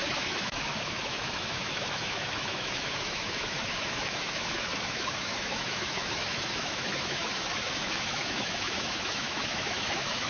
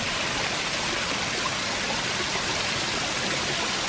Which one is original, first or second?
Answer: second